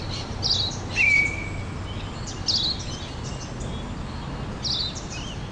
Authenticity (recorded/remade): recorded